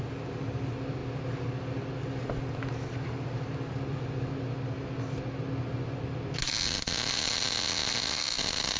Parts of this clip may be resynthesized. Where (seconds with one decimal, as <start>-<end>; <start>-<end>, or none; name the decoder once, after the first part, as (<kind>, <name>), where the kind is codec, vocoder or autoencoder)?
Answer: none